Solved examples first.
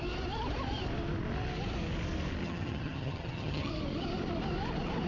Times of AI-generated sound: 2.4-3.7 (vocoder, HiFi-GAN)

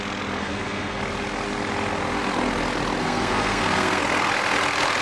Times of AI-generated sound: 0.4-1.0 (codec, SNAC); 3.0-4.0